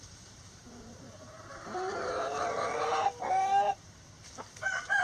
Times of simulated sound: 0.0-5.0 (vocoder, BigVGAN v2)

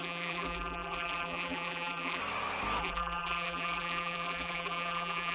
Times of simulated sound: 0.0-2.2 (vocoder, BigVGAN v2); 2.8-5.3

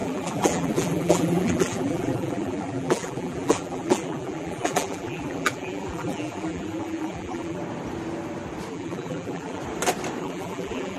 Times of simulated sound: 0.0-7.6 (vocoder, BigVGAN v2); 8.7-9.6; 10.2-11.0

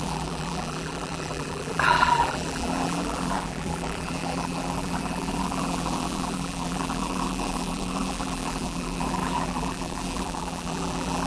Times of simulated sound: 0.0-11.3 (vocoder, BigVGAN v2)